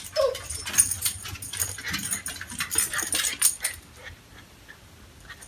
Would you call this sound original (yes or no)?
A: yes